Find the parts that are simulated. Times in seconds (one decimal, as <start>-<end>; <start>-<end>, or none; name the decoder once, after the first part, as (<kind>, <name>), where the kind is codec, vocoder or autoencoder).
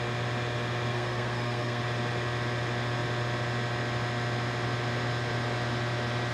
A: 0.9-1.8 (codec, SNAC)